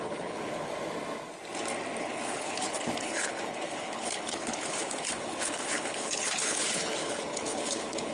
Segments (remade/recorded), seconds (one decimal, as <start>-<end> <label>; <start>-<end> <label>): 0.0-0.7 remade; 0.7-2.0 recorded; 2.0-8.1 remade